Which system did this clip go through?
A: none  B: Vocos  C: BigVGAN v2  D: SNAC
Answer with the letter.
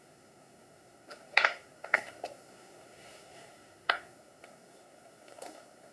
D